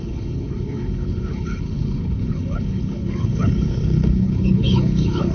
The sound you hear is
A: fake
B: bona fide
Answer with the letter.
A